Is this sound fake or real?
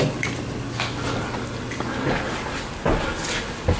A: real